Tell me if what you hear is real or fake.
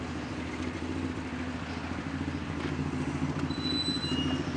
real